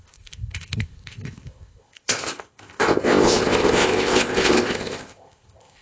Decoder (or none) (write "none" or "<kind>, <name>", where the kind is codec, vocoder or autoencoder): codec, ZipCodec